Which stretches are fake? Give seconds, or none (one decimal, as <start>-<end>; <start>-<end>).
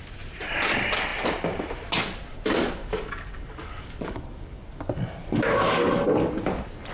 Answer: 2.8-4.8; 5.2-5.9